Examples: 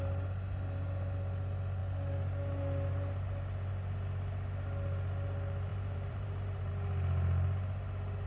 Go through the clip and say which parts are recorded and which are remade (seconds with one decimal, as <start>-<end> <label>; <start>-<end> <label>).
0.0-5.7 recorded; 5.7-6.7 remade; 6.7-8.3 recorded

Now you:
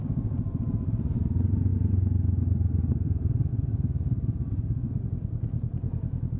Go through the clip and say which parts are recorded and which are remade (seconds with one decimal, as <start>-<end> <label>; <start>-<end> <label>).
0.0-6.4 recorded

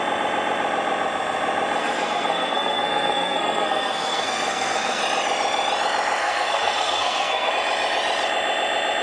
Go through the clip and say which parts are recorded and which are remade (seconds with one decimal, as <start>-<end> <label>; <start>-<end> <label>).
0.0-1.8 recorded; 1.8-5.0 remade; 5.0-6.2 recorded; 6.2-7.5 remade; 7.5-9.0 recorded